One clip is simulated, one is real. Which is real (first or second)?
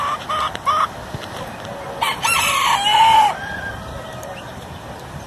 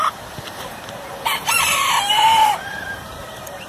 first